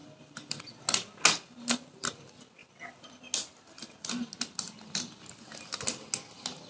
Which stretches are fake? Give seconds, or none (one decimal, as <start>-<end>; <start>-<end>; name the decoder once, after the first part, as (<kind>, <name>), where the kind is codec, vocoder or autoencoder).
0.0-0.6 (vocoder, BigVGAN v2)